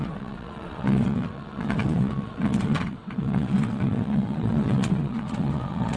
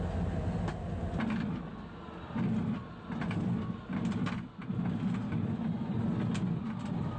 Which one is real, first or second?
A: second